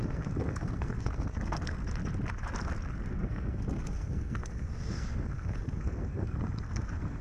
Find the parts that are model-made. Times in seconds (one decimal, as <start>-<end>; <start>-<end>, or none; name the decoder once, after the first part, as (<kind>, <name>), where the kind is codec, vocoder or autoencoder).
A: 0.0-1.8 (codec, SNAC); 2.9-7.2